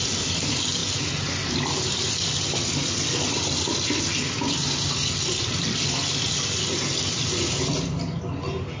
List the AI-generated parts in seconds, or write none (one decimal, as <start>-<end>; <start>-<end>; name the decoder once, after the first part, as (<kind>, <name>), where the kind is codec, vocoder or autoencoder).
none